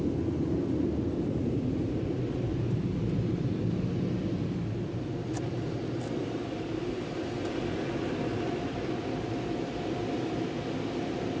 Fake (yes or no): no